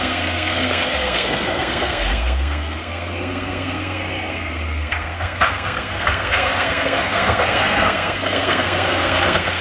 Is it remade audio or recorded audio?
remade